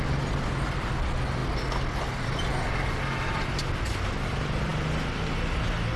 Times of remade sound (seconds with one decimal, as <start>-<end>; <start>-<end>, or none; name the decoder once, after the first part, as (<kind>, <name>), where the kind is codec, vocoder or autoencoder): none